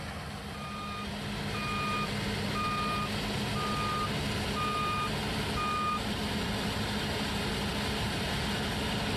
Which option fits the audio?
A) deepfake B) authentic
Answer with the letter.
B